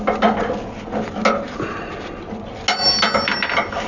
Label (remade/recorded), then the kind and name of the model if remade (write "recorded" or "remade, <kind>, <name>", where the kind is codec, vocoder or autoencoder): recorded